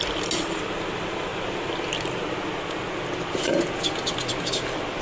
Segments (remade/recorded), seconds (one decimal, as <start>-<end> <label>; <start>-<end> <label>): 0.0-5.0 recorded